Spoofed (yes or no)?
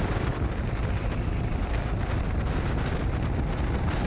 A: no